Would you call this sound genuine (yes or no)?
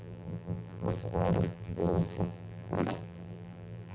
no